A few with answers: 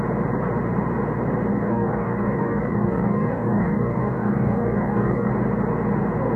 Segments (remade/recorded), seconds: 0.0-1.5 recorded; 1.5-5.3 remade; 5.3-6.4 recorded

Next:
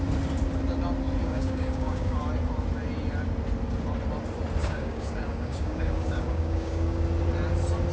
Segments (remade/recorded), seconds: 0.0-1.2 recorded; 1.2-2.2 remade; 2.2-4.6 recorded; 4.6-7.0 remade; 7.0-7.9 recorded

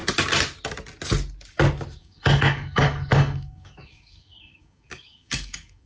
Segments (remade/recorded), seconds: 0.0-2.0 recorded; 2.0-5.9 remade

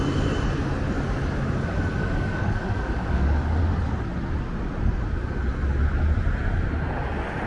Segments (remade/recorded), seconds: 0.0-2.0 recorded; 2.0-3.6 remade; 3.6-7.5 recorded

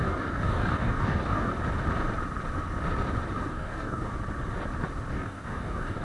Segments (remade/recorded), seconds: 0.0-1.5 remade; 1.5-3.5 recorded; 3.5-4.1 remade; 4.1-5.1 recorded; 5.1-6.0 remade

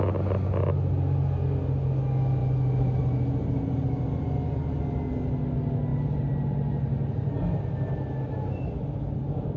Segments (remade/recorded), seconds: 0.0-9.6 recorded

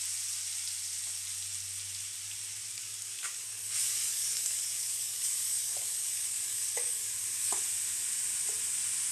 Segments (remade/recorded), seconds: 0.0-2.7 recorded; 2.7-7.6 remade; 7.6-9.1 recorded